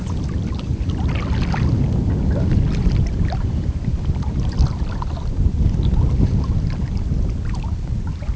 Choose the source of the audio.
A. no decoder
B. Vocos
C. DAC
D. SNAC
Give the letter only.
A